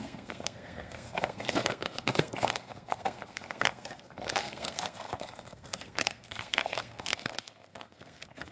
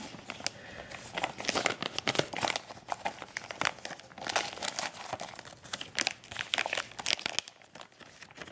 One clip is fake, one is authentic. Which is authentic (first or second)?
second